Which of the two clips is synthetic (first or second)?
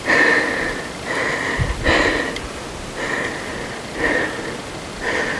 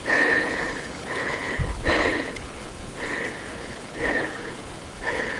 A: second